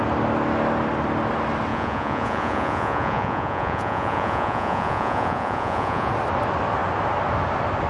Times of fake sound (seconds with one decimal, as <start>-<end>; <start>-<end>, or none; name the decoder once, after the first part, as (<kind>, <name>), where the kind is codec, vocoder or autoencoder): 1.7-6.1 (vocoder, Vocos)